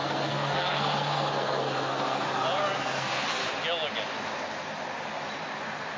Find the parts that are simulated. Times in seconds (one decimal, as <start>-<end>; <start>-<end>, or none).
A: 0.0-2.2; 2.8-3.4